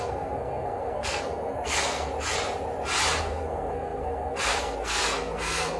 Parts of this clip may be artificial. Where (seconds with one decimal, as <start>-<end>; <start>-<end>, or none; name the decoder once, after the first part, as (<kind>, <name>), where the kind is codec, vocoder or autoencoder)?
0.0-2.1 (codec, SNAC); 3.2-5.8